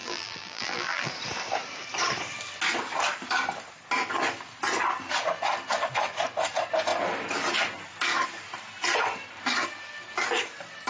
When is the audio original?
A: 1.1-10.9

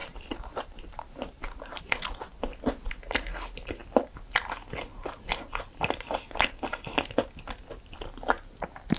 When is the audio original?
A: 1.8-9.0